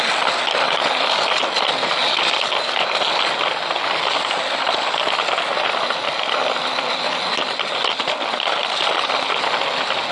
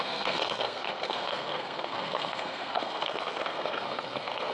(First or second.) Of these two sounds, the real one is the first